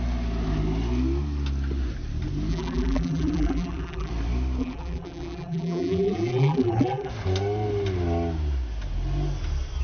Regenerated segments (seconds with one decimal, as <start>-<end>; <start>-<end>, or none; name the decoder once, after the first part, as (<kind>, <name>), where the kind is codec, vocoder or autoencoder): 2.5-4.1 (vocoder, BigVGAN v2); 4.6-7.1